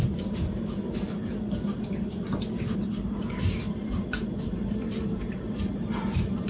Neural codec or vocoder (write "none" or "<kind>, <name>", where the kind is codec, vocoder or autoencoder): vocoder, BigVGAN v2